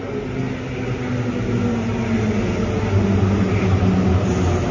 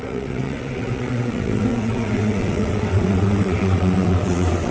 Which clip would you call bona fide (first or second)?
first